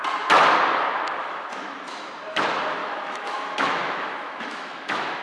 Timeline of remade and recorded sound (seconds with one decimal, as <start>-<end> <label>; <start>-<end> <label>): 0.0-1.2 recorded; 1.2-2.1 remade; 2.1-2.8 recorded; 2.8-5.2 remade